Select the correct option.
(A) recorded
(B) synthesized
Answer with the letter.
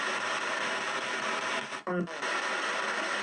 B